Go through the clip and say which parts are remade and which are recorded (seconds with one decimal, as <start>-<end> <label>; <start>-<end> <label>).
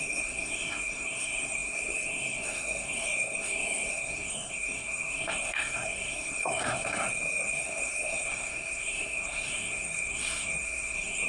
0.0-11.3 remade